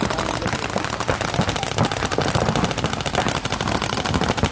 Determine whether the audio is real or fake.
real